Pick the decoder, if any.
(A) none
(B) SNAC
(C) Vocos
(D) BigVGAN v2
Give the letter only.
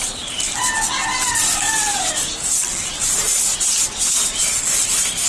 A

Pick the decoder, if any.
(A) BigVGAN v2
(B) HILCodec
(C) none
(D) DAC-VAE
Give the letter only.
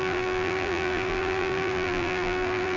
A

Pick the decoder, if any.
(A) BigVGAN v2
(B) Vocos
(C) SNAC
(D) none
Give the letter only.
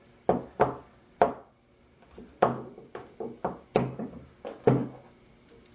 D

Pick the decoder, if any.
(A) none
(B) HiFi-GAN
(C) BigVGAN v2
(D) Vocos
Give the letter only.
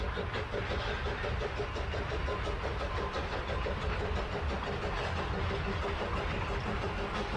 A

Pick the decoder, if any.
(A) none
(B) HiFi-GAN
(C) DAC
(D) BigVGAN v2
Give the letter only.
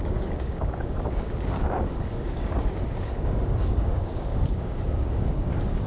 C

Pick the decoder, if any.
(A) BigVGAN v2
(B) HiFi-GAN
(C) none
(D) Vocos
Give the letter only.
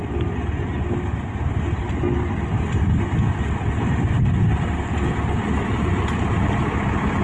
C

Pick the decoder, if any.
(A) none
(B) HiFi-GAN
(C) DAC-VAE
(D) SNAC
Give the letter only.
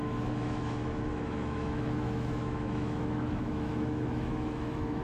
C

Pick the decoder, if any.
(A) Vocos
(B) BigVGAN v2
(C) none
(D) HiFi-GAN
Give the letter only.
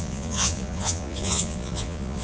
A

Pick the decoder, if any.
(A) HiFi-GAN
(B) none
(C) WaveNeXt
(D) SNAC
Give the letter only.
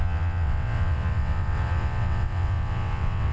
C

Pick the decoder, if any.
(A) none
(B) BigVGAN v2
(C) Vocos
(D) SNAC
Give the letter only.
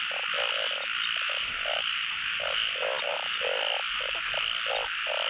A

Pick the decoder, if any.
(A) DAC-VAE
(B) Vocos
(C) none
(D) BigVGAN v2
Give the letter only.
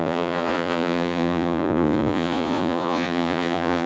B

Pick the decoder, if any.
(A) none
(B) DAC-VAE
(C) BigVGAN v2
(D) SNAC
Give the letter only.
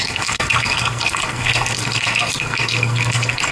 D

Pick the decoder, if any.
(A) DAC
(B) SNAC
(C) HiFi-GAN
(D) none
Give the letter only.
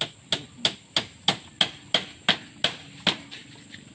D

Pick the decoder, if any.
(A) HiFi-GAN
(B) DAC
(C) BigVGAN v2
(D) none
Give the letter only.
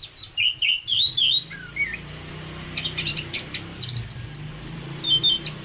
C